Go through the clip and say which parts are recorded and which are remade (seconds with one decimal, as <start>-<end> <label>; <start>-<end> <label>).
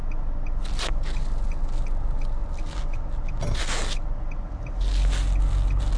0.0-6.0 recorded